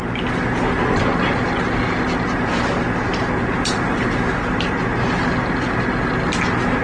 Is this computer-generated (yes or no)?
no